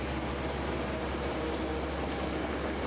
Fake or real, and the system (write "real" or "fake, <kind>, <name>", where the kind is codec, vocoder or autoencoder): real